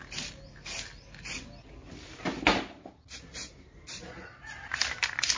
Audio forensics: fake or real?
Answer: real